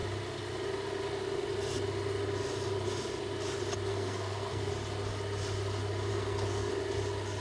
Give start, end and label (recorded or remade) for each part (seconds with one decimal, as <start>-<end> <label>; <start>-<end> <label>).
0.0-3.9 recorded; 3.9-4.7 remade; 4.7-6.1 recorded; 6.1-6.7 remade; 6.7-7.4 recorded